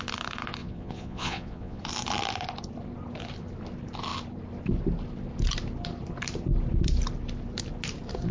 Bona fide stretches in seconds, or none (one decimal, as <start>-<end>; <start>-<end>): 0.0-0.6; 1.8-8.3